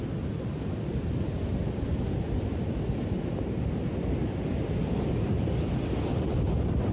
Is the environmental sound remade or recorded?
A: recorded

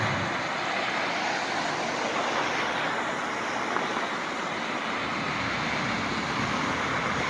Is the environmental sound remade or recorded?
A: recorded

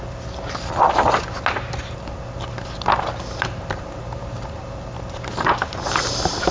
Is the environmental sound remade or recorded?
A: recorded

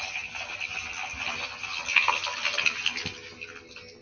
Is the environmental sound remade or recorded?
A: recorded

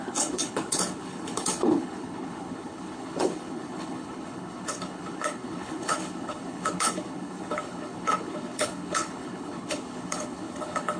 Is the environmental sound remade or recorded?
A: remade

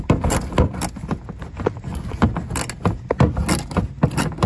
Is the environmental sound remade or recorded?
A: recorded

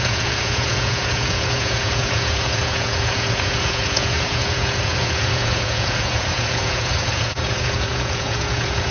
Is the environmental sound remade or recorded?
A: remade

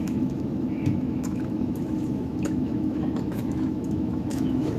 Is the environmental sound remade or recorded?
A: remade